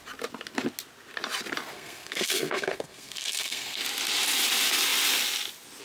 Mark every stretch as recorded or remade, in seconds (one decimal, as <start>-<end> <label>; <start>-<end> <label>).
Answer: 0.0-1.7 recorded; 1.7-3.8 remade; 3.8-5.8 recorded